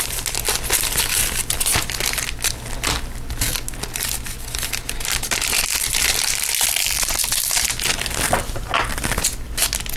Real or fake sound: real